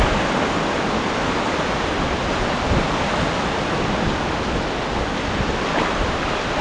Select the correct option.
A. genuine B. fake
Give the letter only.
A